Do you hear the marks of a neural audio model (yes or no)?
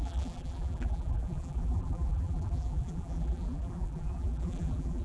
yes